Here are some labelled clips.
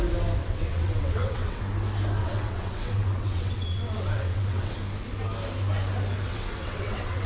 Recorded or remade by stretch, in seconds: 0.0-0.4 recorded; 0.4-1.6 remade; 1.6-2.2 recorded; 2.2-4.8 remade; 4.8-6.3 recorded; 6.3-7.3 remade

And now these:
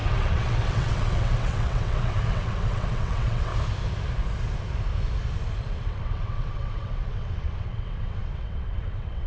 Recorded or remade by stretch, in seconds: 0.0-3.5 remade; 3.5-5.6 recorded; 5.6-9.3 remade